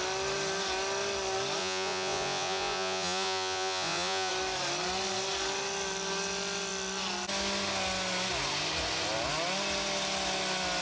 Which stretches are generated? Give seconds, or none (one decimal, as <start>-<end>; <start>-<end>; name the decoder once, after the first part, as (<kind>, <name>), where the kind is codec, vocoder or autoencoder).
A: 1.6-4.3 (vocoder, Vocos)